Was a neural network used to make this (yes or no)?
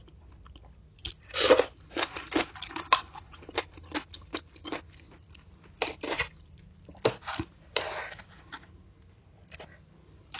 no